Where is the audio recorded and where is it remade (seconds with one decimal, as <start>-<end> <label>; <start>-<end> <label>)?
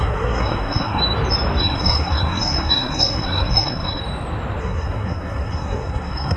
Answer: 0.0-1.0 remade; 1.0-1.6 recorded; 1.6-4.0 remade; 4.0-4.6 recorded; 4.6-6.4 remade